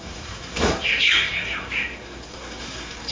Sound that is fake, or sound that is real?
fake